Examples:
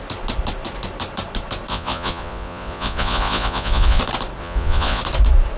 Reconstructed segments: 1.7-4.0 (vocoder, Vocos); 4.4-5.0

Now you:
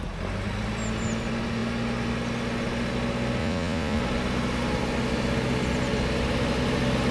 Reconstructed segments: 3.4-4.0 (vocoder, Vocos)

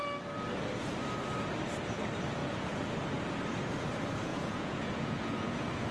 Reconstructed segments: 2.4-2.9 (vocoder, Vocos); 4.3-5.9

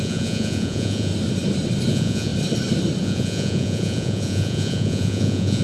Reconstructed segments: 0.0-1.1 (vocoder, Vocos); 1.9-2.3; 3.0-5.6

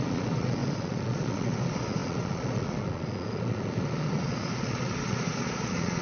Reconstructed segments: 0.0-6.0 (vocoder, Vocos)